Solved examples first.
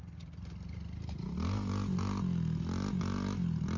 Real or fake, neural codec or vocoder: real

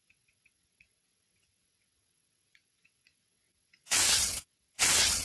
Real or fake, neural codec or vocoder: fake, vocoder, WaveNeXt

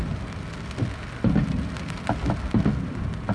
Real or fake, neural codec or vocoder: real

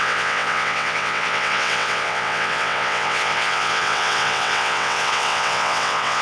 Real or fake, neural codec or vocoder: fake, vocoder, WaveNeXt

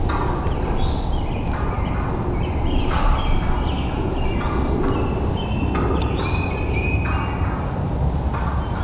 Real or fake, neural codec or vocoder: real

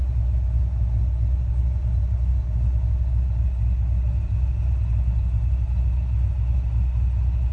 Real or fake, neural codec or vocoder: real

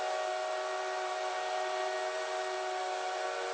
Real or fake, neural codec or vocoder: real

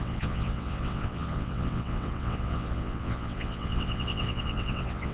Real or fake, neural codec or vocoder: fake, vocoder, WaveNeXt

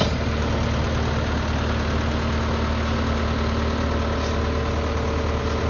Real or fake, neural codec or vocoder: real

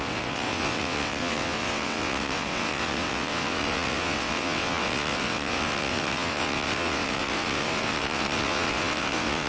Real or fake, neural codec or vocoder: fake, vocoder, WaveNeXt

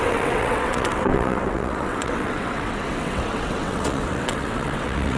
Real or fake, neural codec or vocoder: fake, vocoder, WaveNeXt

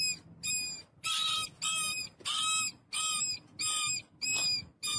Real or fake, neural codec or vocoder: real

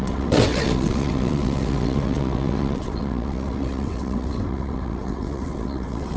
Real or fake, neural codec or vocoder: fake, vocoder, WaveNeXt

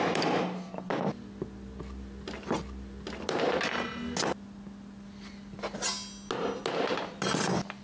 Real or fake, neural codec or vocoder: real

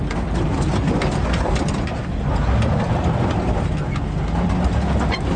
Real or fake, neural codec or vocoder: real